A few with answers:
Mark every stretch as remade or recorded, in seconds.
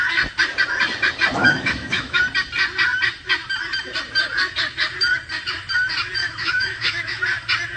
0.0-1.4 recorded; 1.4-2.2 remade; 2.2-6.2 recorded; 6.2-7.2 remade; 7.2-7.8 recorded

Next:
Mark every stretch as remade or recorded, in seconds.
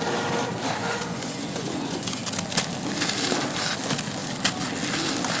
0.0-0.8 recorded; 0.8-2.2 remade; 2.2-5.4 recorded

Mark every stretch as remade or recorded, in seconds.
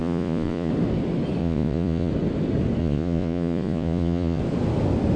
0.0-0.7 remade; 0.7-1.4 recorded; 1.4-2.1 remade; 2.1-2.8 recorded; 2.8-4.4 remade; 4.4-5.2 recorded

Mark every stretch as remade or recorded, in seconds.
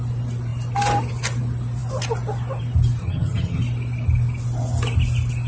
0.0-3.0 recorded; 3.0-3.6 remade; 3.6-5.5 recorded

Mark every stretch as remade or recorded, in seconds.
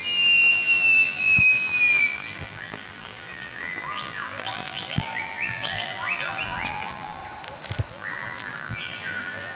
0.0-7.2 remade; 7.2-7.9 recorded; 7.9-9.6 remade